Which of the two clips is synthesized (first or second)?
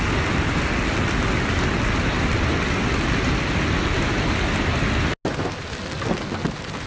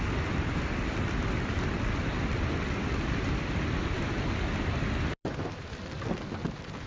second